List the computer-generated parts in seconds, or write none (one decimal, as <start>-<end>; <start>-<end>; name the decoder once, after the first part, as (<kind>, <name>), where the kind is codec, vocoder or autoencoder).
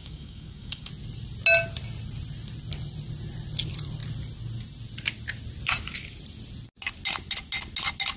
0.0-0.9 (codec, DAC)